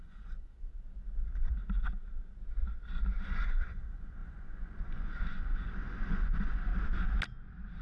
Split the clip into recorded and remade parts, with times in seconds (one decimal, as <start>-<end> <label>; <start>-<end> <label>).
0.0-0.7 remade; 0.7-3.2 recorded; 3.2-6.7 remade; 6.7-7.8 recorded

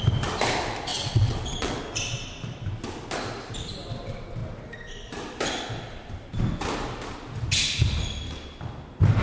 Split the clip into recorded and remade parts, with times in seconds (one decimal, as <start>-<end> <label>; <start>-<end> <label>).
0.0-0.9 recorded; 0.9-1.8 remade; 1.8-9.2 recorded

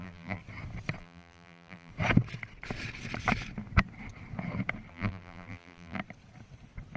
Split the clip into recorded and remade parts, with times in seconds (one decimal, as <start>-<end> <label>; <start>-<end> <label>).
0.0-0.4 remade; 0.4-1.0 recorded; 1.0-1.9 remade; 1.9-4.9 recorded; 4.9-6.0 remade; 6.0-7.0 recorded

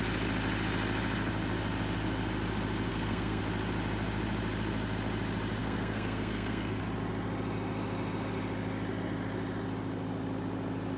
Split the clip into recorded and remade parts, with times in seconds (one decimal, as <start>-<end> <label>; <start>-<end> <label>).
0.0-2.9 recorded; 2.9-3.4 remade; 3.4-5.6 recorded; 5.6-6.8 remade; 6.8-11.0 recorded

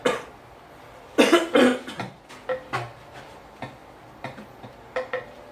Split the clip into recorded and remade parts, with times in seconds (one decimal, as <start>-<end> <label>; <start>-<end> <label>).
0.0-5.5 recorded